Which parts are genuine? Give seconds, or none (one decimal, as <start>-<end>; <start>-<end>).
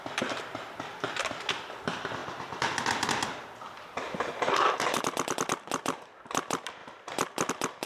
6.8-7.5